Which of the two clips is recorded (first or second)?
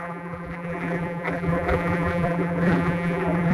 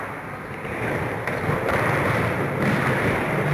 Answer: second